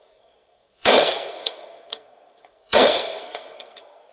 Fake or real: fake